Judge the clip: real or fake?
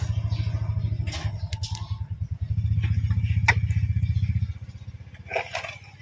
real